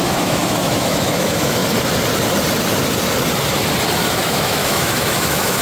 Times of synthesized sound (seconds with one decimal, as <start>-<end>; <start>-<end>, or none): 0.0-1.6; 4.0-5.6